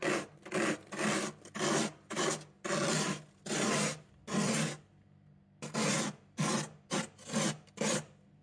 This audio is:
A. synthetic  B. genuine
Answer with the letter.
B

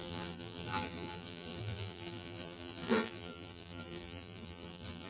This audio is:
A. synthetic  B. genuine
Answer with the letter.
A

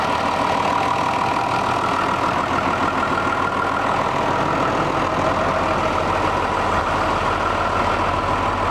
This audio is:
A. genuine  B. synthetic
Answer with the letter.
A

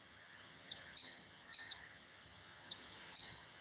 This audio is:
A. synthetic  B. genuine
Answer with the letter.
A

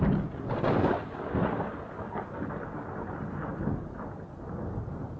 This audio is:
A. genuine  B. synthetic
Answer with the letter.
A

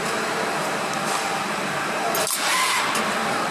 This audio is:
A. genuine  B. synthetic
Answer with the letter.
B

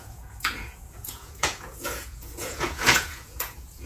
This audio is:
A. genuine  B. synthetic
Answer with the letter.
B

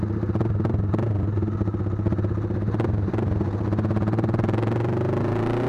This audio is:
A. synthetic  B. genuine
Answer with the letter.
B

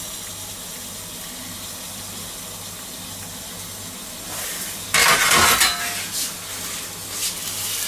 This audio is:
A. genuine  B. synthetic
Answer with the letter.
A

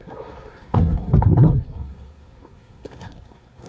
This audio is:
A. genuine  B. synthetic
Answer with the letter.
B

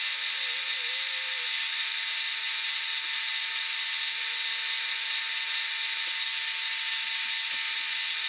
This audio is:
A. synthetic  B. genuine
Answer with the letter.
B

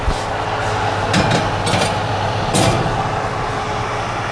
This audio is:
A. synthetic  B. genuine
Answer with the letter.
B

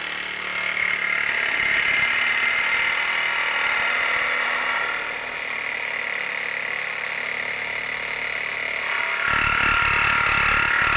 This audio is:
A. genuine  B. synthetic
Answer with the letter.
A